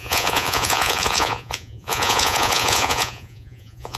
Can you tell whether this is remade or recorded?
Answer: remade